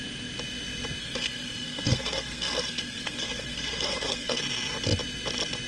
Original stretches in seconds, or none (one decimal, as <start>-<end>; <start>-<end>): 0.0-1.0; 4.4-5.7